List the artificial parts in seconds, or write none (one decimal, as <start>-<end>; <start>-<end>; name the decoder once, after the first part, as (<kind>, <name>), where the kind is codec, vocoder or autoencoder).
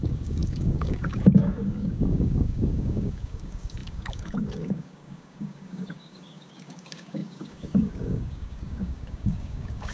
0.0-9.9 (codec, DAC)